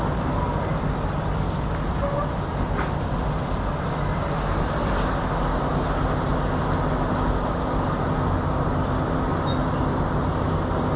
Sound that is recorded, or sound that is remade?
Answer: recorded